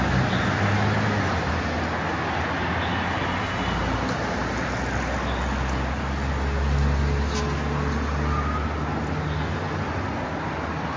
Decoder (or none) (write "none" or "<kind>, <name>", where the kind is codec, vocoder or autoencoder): none